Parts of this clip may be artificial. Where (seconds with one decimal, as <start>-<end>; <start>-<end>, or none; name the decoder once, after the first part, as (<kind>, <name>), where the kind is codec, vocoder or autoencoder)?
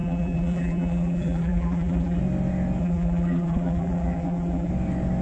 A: 0.0-2.2 (vocoder, BigVGAN v2); 2.8-4.7